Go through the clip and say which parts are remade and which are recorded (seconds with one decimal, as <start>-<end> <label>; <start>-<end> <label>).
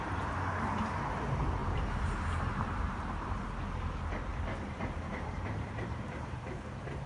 0.0-1.6 recorded; 1.6-3.3 remade; 3.3-4.3 recorded; 4.3-6.6 remade; 6.6-7.1 recorded